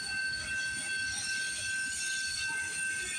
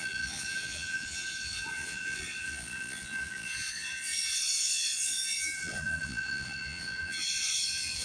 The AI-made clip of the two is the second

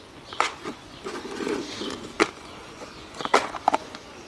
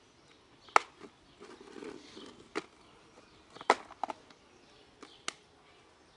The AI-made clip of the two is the first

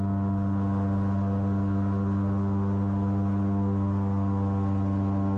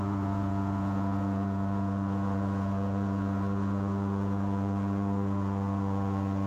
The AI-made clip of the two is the second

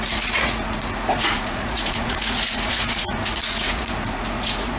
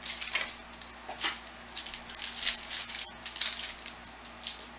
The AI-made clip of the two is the first